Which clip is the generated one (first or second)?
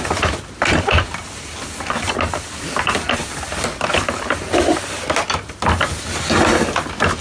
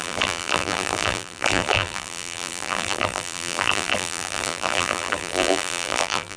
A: second